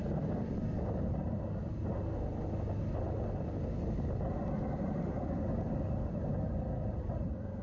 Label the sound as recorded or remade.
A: recorded